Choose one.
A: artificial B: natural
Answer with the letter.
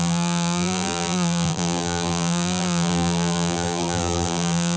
A